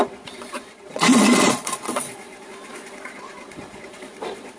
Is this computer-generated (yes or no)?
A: yes